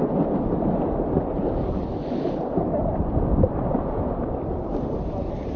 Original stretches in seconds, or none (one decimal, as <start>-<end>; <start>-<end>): 0.0-5.6